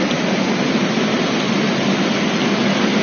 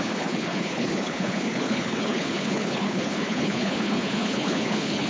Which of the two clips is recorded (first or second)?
first